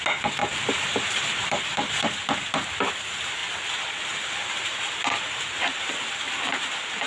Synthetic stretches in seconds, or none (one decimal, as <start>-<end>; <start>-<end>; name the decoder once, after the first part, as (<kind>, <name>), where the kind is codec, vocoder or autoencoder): 0.4-2.9 (vocoder, BigVGAN v2)